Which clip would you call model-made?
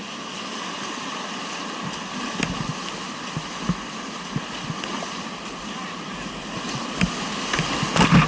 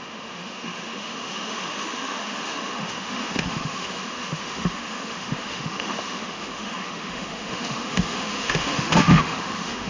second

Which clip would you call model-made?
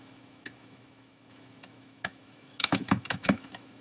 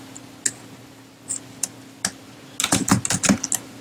first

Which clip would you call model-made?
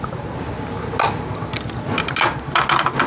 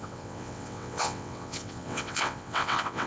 second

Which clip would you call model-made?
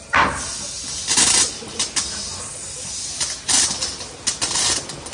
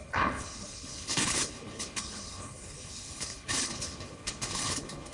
second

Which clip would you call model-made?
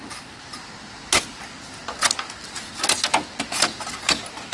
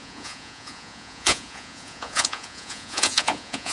second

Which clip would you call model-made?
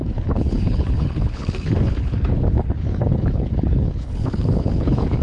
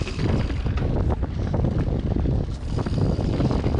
first